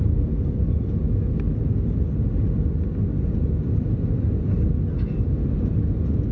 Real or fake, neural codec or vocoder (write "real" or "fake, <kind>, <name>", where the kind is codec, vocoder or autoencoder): real